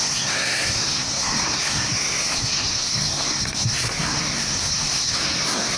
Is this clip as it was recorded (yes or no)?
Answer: no